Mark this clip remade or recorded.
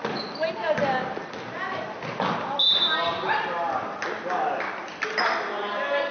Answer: recorded